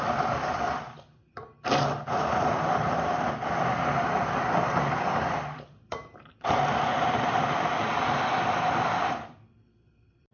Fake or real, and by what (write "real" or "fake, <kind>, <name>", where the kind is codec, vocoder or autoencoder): fake, vocoder, BigVGAN v2